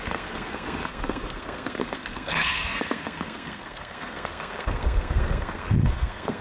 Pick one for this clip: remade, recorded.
remade